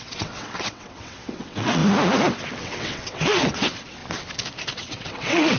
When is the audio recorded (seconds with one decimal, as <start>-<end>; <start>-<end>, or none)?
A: 1.8-2.6; 4.0-4.7